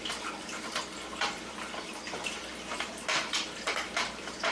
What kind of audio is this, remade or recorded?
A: remade